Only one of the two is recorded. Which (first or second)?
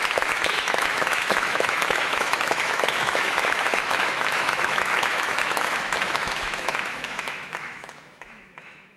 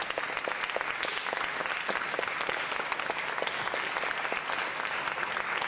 second